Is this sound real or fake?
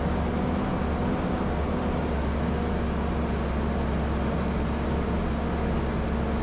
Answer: real